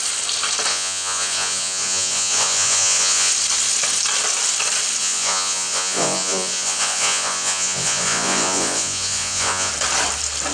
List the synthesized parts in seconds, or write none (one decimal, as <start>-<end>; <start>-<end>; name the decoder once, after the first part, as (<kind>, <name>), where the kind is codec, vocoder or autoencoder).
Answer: 0.7-3.3 (vocoder, Vocos); 5.0-9.7